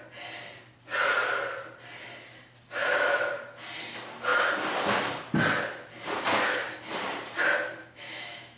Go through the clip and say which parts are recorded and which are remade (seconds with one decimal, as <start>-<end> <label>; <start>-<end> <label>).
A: 0.0-2.8 recorded; 2.8-3.3 remade; 3.3-7.8 recorded; 7.8-8.6 remade